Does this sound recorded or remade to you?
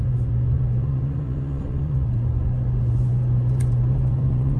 remade